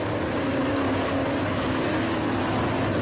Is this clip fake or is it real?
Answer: real